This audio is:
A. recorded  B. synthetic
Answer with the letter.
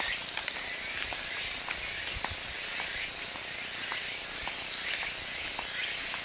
A